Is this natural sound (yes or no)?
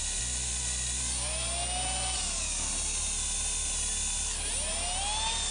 yes